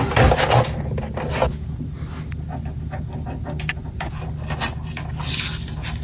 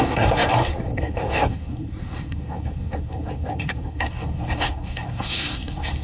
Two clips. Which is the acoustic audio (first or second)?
first